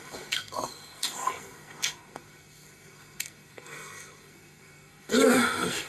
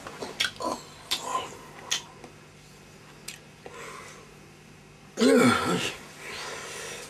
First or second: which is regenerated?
first